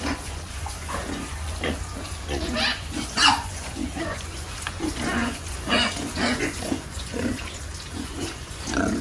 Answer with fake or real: fake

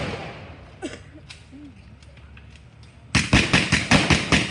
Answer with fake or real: real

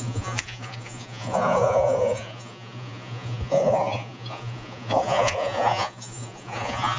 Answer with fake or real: fake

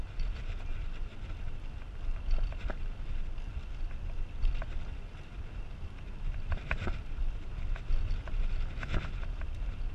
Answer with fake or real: real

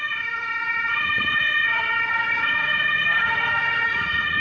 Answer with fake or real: fake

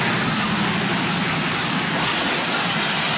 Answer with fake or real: real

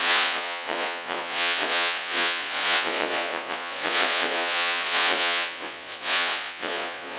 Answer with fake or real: fake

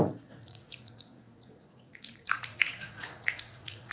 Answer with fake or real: fake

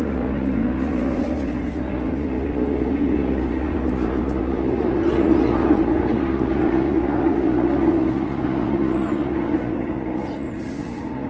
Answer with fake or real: fake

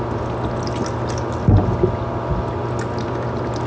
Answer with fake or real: real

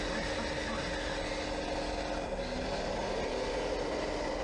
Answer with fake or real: real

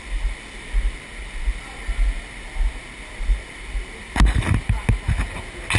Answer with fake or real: real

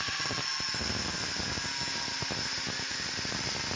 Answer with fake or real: real